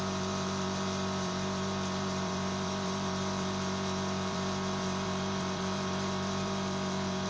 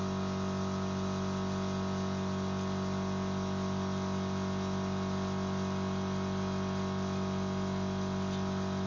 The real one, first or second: second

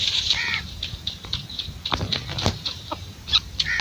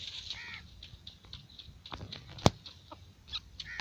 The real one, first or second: second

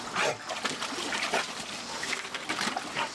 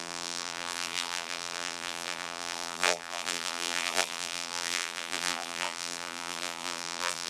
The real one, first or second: first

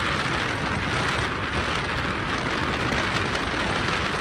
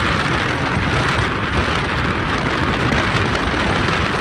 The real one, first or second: first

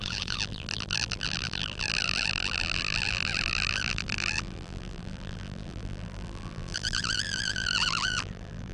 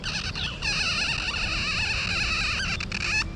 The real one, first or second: second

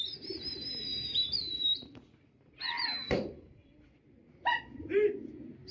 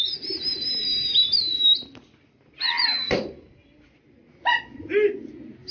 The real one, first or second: second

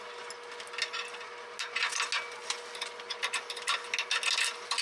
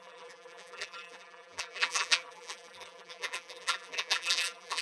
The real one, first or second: first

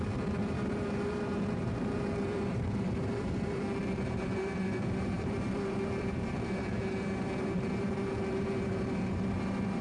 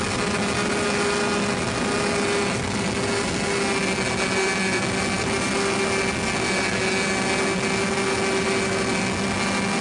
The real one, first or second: second